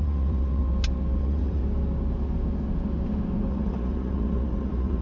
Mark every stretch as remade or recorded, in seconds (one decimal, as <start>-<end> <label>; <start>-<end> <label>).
0.0-0.6 remade; 0.6-1.2 recorded; 1.2-1.6 remade; 1.6-3.5 recorded; 3.5-5.0 remade